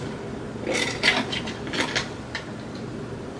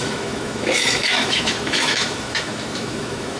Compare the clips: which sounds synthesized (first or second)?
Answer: second